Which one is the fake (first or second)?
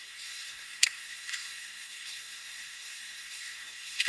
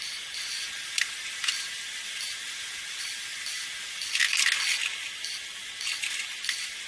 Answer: first